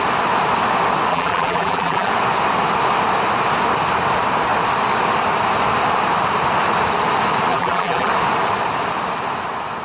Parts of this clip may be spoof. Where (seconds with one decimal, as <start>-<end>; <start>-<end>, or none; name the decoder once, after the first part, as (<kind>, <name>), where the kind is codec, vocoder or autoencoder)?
1.1-2.1 (vocoder, BigVGAN v2); 7.5-8.1